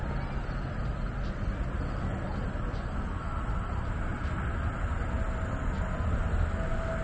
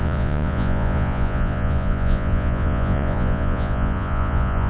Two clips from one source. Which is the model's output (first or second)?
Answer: second